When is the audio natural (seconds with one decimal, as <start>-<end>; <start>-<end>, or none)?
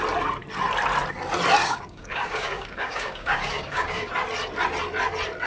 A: 0.0-1.6; 4.1-5.5